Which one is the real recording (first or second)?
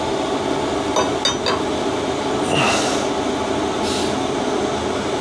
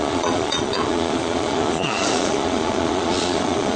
first